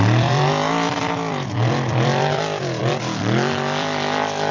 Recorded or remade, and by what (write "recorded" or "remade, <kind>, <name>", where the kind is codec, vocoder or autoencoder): remade, vocoder, BigVGAN v2